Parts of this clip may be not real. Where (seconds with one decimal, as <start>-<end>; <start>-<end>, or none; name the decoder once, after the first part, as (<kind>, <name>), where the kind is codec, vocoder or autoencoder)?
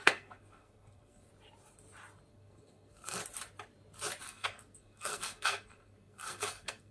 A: 0.0-1.3 (codec, SNAC); 2.3-3.2; 4.2-6.9